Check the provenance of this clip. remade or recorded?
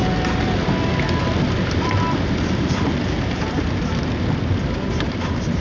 recorded